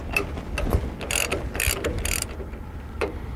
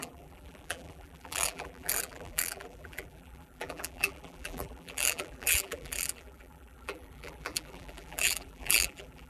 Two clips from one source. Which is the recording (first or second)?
first